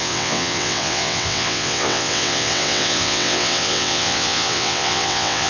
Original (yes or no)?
no